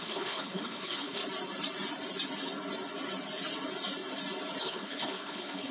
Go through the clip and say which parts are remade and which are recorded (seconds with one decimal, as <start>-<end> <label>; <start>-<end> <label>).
0.0-1.2 remade; 1.2-4.6 recorded; 4.6-5.7 remade